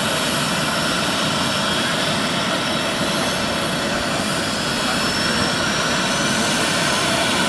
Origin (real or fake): real